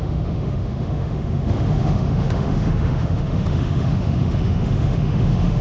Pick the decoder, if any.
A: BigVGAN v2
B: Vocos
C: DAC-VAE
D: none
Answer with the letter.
C